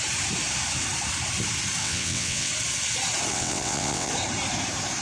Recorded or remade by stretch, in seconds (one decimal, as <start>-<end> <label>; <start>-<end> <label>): 0.0-1.8 recorded; 1.8-2.5 remade; 2.5-3.3 recorded; 3.3-4.1 remade; 4.1-5.0 recorded